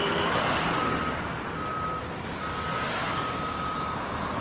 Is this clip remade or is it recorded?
recorded